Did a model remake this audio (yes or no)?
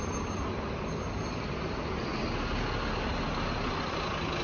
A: no